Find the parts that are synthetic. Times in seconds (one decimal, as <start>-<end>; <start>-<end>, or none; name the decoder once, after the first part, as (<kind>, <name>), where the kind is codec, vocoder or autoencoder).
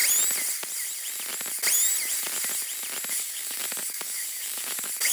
3.1-5.1 (codec, DAC)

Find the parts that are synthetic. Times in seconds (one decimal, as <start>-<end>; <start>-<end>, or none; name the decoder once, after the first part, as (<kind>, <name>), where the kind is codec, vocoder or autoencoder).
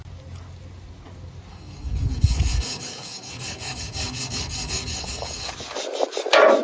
1.5-5.5 (codec, DAC)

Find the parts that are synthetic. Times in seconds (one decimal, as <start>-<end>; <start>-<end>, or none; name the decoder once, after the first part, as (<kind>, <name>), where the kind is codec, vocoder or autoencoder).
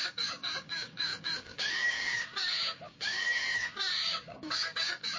0.0-5.2 (codec, DAC)